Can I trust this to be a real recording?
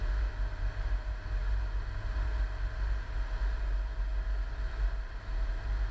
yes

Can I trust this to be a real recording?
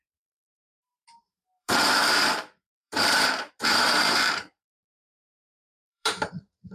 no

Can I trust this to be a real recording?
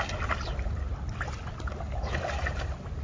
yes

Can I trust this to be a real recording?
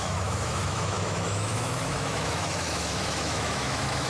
no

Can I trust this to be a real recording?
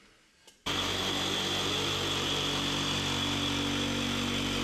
yes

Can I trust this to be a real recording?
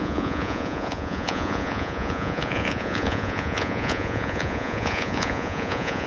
no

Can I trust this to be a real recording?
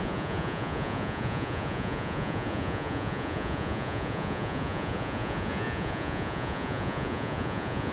no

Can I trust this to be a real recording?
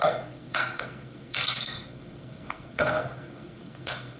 no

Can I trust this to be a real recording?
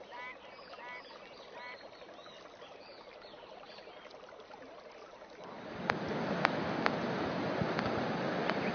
yes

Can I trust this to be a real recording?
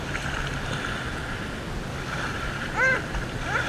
yes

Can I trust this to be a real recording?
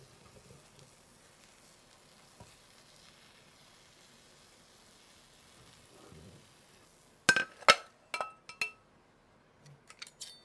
yes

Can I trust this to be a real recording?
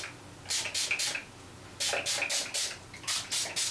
yes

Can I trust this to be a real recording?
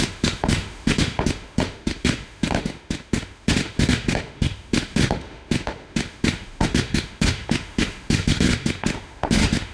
no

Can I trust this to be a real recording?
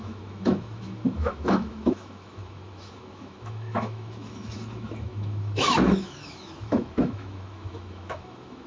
no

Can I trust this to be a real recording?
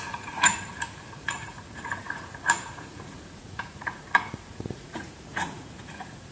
no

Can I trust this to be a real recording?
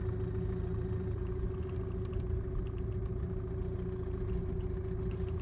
yes